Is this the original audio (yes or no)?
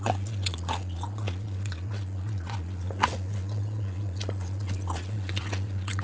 no